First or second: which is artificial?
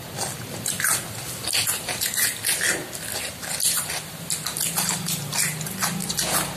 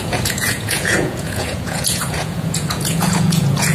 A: second